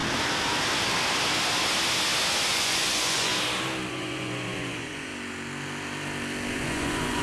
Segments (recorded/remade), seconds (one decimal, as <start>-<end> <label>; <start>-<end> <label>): 0.0-2.5 recorded; 2.5-3.3 remade; 3.3-3.9 recorded; 3.9-5.1 remade; 5.1-6.5 recorded; 6.5-7.2 remade

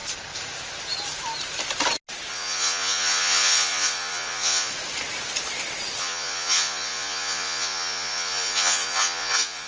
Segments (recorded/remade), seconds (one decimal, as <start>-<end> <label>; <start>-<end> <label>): 0.0-2.3 recorded; 2.3-4.7 remade; 4.7-6.0 recorded; 6.0-9.7 remade

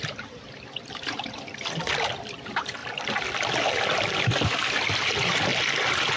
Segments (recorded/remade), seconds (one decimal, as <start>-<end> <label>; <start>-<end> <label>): 0.0-5.5 remade; 5.5-6.2 recorded